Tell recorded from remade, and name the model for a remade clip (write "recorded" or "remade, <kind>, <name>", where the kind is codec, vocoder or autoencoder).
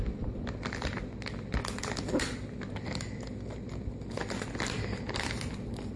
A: recorded